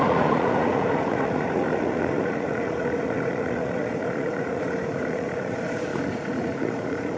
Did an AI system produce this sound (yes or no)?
yes